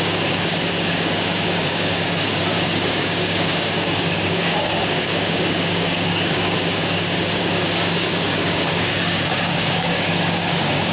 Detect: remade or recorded remade